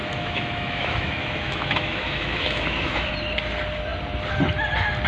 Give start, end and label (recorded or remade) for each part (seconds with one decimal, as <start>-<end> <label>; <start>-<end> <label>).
0.0-3.1 remade; 3.1-5.1 recorded